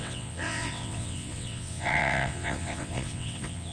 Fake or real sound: fake